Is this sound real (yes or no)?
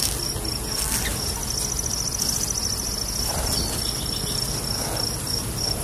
yes